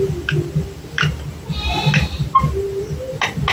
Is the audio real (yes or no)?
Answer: yes